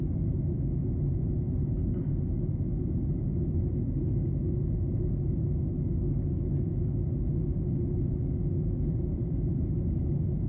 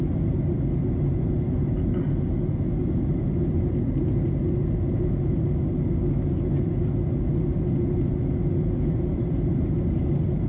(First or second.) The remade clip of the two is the first